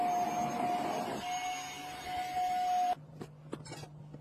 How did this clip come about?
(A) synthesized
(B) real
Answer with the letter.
B